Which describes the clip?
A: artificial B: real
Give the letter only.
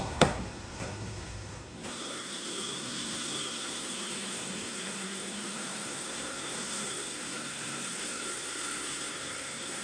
A